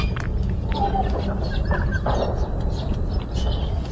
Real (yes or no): yes